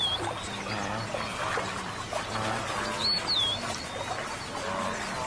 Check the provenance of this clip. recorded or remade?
recorded